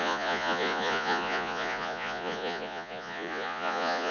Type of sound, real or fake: fake